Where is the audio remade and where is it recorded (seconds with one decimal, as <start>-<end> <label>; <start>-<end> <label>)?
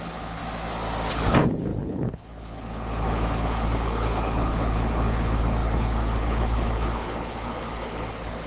0.0-0.4 remade; 0.4-1.1 recorded; 1.1-8.5 remade